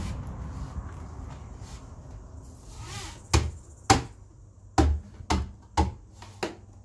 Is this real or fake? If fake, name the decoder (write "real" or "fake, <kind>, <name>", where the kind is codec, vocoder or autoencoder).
real